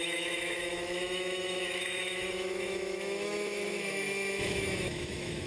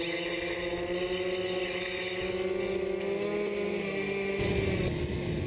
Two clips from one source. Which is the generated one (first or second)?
first